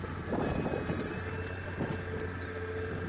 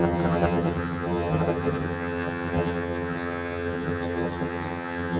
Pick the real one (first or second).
first